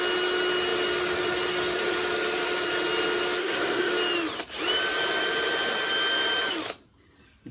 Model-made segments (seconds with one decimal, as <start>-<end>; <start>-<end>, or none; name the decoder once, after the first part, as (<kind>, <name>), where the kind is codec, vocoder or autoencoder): 3.4-3.9 (codec, SNAC)

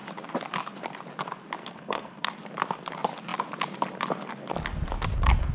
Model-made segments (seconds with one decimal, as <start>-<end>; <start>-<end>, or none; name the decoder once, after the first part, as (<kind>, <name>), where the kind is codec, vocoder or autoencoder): 1.6-2.3 (codec, SNAC)

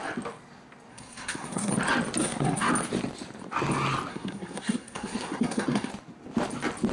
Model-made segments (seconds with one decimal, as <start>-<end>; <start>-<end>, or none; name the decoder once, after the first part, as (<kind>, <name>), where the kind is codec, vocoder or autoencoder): 0.9-1.7 (codec, SNAC); 2.2-2.7; 4.1-5.9

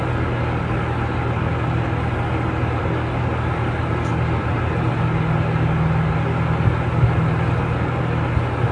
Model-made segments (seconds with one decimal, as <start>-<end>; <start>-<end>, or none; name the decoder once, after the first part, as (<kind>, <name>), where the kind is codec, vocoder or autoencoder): none

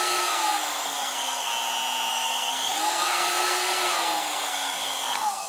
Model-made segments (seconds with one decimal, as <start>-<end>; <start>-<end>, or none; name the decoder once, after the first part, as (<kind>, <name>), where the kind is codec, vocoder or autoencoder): 0.0-1.5 (codec, SNAC); 2.1-5.5

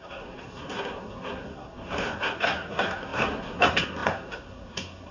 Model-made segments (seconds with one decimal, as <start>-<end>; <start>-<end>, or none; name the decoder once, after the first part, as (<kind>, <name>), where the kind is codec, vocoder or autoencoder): 0.0-5.1 (codec, SNAC)